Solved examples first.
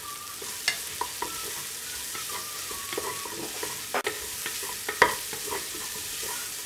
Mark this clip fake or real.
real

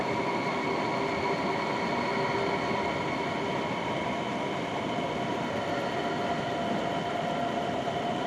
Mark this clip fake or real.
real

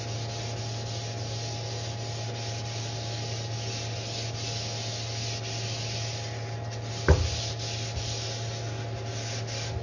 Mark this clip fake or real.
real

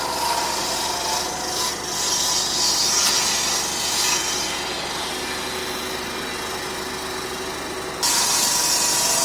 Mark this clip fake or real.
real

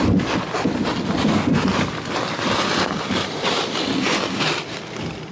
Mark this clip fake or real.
real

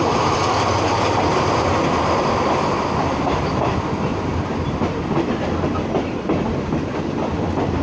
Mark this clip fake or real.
real